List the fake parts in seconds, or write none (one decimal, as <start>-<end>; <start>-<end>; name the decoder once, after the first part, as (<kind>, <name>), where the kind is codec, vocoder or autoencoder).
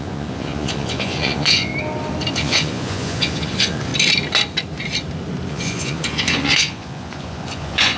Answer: 0.0-1.7 (vocoder, Vocos); 2.3-3.9; 5.5-8.0